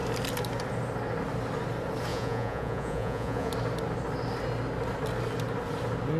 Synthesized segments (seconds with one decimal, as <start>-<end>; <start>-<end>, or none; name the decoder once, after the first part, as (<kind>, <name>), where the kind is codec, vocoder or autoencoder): 2.1-3.5 (vocoder, Vocos)